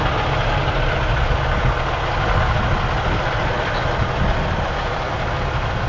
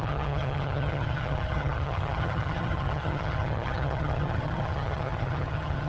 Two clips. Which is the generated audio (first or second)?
second